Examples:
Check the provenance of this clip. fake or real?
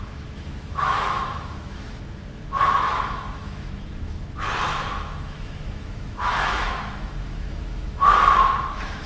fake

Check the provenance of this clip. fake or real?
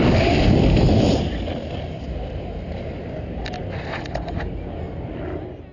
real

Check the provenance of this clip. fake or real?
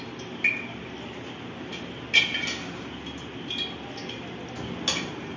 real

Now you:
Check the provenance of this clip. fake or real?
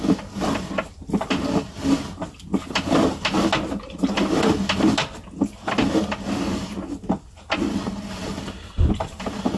real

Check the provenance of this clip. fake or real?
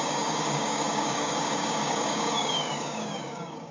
fake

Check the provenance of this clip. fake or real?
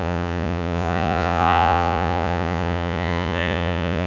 fake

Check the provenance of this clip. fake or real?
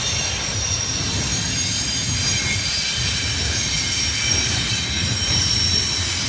real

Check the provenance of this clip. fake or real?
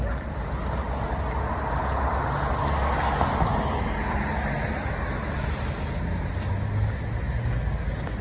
real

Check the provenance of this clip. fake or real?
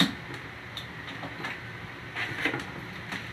real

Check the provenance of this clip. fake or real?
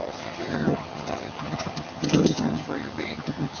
fake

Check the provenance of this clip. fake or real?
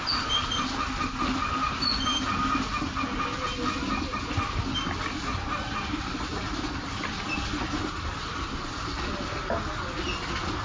real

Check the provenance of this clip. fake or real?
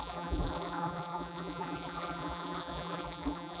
fake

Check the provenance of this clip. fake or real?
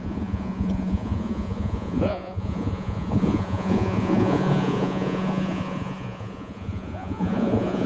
fake